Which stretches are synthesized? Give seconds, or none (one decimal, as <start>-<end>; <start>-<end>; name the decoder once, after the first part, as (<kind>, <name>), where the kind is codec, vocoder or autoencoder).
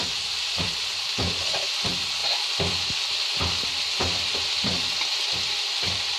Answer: 0.0-0.8 (vocoder, BigVGAN v2); 2.2-6.2